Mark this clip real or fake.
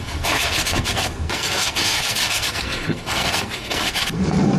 fake